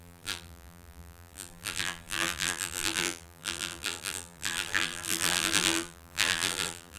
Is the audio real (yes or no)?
no